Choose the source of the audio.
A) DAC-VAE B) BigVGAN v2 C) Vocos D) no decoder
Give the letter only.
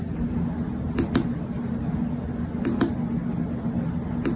D